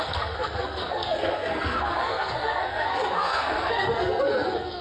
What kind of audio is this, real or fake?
fake